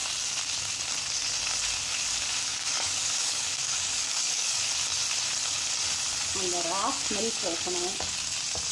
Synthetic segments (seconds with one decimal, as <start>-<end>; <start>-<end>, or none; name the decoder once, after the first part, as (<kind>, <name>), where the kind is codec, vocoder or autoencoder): 2.5-4.7 (codec, DAC)